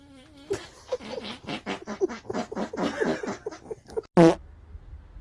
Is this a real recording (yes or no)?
yes